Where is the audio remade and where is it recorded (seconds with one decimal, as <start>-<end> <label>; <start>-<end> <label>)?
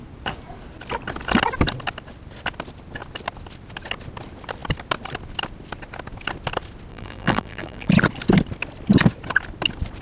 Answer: 0.0-6.9 recorded; 6.9-7.9 remade; 7.9-10.0 recorded